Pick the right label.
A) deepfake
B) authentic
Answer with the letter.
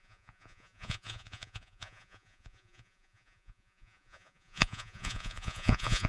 A